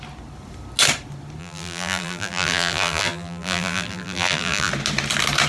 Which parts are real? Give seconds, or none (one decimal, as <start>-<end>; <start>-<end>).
0.0-1.4; 4.7-5.5